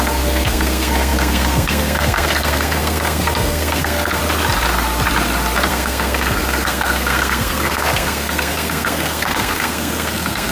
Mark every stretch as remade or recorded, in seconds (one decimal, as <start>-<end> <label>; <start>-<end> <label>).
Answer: 0.0-4.2 remade; 4.2-5.7 recorded; 5.7-10.5 remade